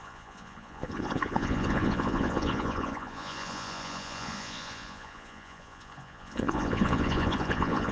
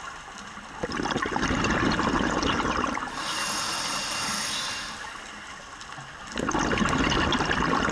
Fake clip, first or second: first